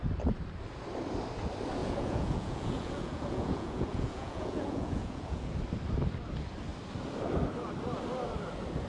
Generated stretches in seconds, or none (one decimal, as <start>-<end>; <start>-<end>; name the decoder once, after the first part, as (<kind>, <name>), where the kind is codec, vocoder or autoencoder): 1.8-5.5 (vocoder, Vocos)